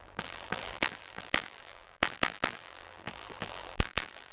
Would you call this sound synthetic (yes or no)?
yes